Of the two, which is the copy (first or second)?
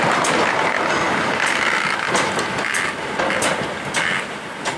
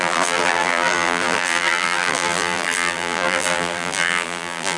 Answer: second